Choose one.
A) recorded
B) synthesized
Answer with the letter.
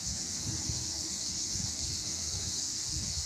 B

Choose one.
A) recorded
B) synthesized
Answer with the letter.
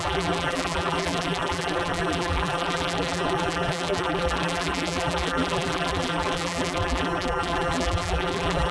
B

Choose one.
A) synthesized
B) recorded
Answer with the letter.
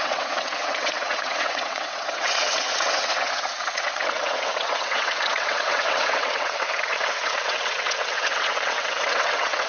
A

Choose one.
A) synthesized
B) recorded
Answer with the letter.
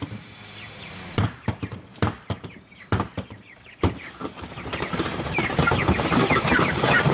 A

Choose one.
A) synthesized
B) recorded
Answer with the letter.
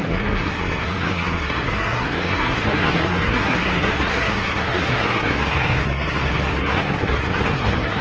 A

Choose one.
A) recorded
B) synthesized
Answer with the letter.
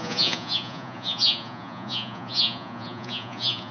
B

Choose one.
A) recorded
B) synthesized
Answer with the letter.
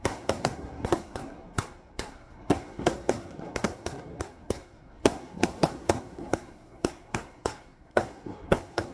B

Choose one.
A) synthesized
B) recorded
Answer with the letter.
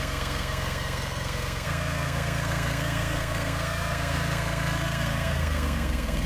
A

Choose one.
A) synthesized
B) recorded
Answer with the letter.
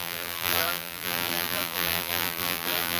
A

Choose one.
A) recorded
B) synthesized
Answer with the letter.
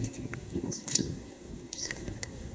B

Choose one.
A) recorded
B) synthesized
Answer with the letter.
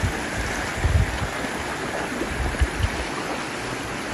A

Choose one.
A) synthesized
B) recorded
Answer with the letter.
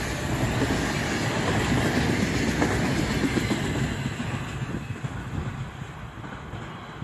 B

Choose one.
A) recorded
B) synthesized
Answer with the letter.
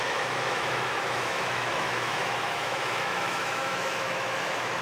B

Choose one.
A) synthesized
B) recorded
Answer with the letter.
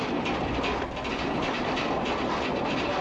B